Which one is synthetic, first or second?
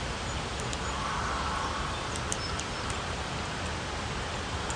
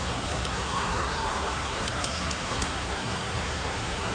second